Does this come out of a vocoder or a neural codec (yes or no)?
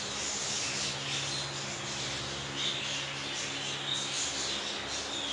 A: no